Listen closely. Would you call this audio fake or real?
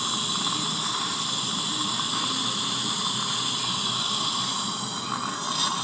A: real